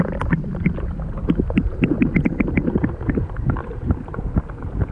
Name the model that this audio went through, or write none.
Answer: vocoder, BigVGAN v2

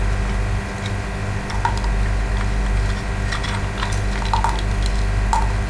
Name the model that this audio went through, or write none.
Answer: none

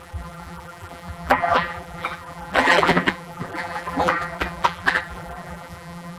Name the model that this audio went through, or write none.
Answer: vocoder, BigVGAN v2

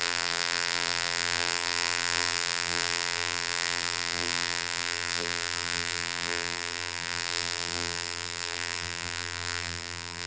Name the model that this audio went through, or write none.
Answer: vocoder, BigVGAN v2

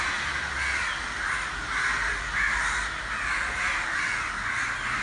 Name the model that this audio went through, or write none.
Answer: none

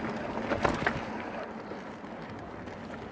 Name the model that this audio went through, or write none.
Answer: none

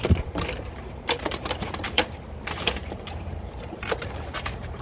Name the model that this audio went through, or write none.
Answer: vocoder, BigVGAN v2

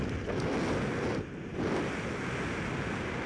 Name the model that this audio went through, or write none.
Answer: none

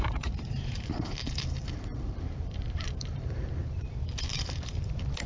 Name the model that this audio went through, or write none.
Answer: vocoder, BigVGAN v2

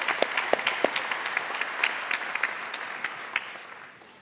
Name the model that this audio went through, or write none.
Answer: none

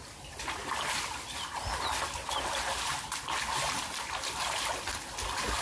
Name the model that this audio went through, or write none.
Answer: none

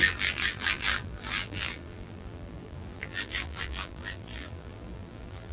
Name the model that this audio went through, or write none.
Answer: vocoder, BigVGAN v2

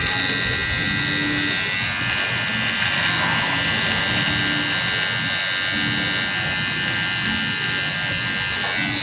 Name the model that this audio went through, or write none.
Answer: none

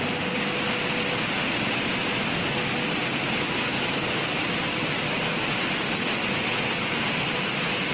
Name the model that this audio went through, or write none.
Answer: none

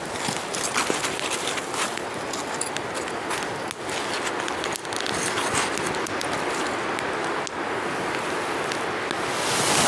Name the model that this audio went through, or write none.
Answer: none